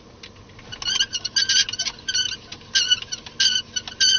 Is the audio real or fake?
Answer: real